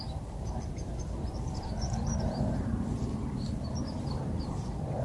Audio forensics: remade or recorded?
remade